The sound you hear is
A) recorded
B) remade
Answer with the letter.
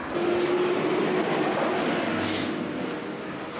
A